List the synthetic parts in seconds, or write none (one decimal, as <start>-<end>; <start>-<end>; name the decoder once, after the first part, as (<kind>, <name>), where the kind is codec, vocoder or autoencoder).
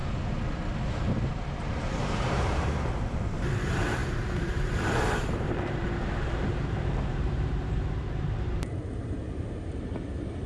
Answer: 1.3-10.5 (vocoder, BigVGAN v2)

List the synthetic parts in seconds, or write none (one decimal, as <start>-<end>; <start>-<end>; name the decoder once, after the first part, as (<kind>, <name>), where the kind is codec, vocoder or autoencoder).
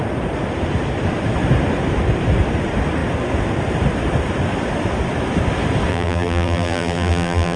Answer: 5.9-7.6 (vocoder, BigVGAN v2)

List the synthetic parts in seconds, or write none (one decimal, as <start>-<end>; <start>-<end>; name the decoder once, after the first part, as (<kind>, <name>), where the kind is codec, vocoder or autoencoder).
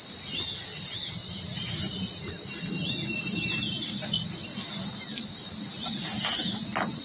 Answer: 1.2-2.6 (vocoder, BigVGAN v2); 4.5-6.0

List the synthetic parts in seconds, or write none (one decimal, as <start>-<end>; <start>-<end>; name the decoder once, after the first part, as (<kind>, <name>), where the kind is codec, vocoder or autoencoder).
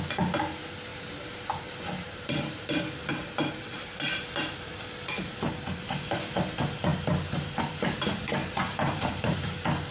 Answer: 0.9-4.6 (vocoder, BigVGAN v2); 8.4-9.4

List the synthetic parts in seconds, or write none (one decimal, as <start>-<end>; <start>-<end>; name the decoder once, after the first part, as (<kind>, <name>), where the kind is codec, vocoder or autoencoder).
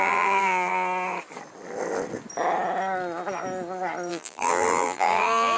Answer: 0.0-0.7 (vocoder, BigVGAN v2); 4.1-5.6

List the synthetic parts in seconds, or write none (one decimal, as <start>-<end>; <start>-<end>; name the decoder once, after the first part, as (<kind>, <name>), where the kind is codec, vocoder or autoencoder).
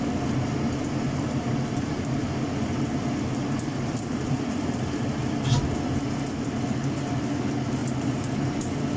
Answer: 3.7-4.6 (vocoder, BigVGAN v2); 7.8-8.4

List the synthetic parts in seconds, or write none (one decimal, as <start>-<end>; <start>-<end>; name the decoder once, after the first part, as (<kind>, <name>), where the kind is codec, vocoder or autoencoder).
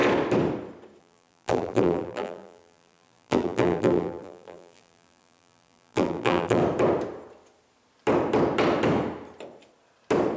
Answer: 1.0-6.6 (vocoder, BigVGAN v2)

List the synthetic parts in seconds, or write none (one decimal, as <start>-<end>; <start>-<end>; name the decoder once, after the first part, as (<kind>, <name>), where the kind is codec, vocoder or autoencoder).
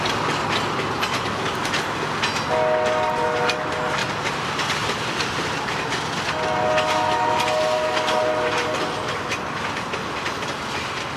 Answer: 4.0-5.9 (vocoder, BigVGAN v2)